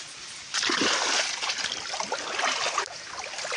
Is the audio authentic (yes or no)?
yes